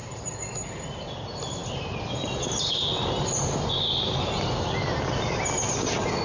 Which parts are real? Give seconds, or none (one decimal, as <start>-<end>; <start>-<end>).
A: 0.0-6.2